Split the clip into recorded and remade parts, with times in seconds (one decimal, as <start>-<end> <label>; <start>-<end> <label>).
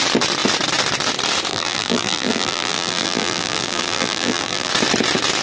0.0-1.5 recorded; 1.5-4.7 remade; 4.7-5.4 recorded